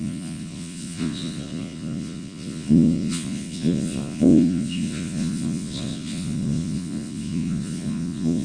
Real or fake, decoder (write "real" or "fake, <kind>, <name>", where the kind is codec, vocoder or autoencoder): fake, vocoder, Vocos